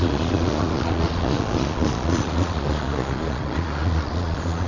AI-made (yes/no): yes